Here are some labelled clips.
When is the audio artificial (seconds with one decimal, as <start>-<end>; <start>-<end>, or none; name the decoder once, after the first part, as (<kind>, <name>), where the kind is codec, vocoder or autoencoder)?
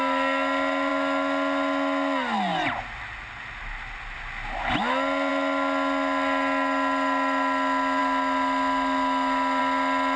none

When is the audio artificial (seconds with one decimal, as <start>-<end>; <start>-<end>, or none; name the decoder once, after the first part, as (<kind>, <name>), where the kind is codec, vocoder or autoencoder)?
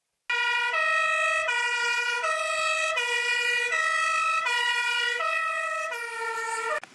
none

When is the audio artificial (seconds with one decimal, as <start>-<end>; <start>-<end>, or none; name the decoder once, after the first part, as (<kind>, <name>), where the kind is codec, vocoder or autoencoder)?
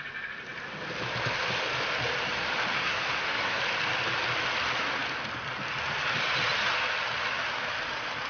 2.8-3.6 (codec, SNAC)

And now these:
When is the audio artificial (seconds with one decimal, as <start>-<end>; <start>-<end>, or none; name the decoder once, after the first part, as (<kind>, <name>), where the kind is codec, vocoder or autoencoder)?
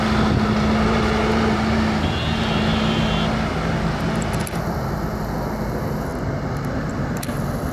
none